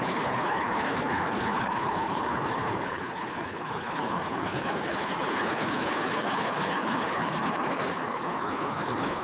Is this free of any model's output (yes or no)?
no